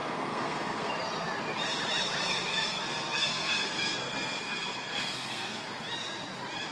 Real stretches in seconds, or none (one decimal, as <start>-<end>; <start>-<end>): 0.9-2.5; 5.6-6.7